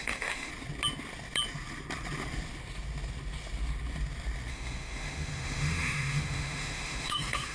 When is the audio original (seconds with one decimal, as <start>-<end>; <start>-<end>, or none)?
0.5-4.5

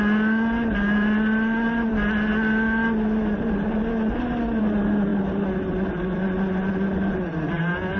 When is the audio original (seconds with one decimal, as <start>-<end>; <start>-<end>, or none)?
0.0-8.0

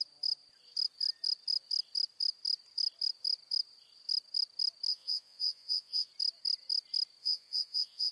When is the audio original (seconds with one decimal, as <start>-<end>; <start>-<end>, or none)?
0.0-4.9; 6.1-7.2

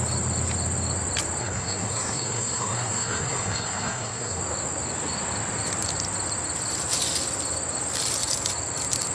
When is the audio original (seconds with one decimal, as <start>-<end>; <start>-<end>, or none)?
0.0-1.4; 4.4-9.1

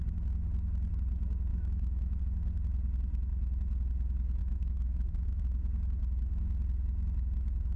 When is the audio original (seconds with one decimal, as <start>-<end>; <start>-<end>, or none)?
0.0-1.5; 2.2-4.4; 5.4-7.8

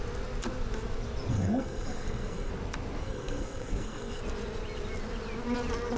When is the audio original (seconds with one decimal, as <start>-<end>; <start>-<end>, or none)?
0.0-1.3; 2.5-3.0; 4.2-6.0

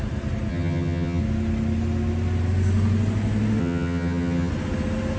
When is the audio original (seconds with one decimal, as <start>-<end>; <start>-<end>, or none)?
0.0-0.5; 1.2-3.6; 4.5-5.2

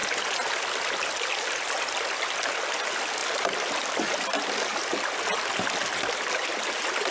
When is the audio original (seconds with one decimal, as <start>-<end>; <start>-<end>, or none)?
0.0-7.1